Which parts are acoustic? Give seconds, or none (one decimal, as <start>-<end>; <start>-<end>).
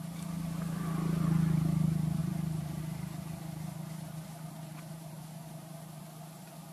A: 0.0-2.2; 2.8-4.7; 6.0-6.7